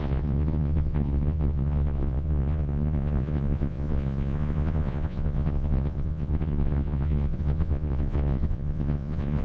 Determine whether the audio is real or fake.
fake